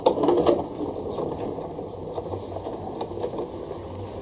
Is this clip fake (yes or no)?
no